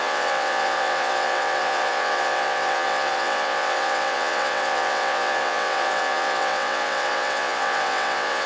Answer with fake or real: fake